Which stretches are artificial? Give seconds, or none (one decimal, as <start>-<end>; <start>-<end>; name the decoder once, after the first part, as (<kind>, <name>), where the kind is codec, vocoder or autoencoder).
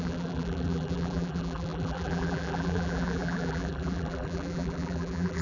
0.0-5.4 (vocoder, BigVGAN v2)